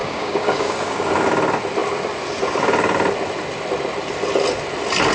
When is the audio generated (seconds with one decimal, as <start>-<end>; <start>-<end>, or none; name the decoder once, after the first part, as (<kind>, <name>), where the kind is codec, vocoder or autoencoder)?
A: 0.0-1.1 (codec, DAC)